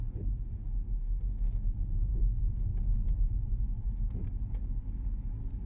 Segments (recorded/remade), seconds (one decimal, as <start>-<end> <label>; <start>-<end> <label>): 0.0-1.0 recorded; 1.0-1.6 remade; 1.6-5.7 recorded